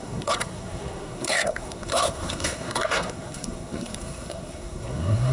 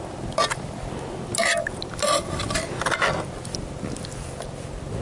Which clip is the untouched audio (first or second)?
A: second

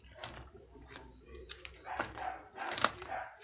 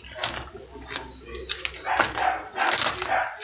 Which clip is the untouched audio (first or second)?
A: second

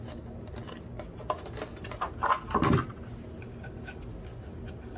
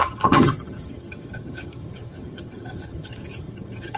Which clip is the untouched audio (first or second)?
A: first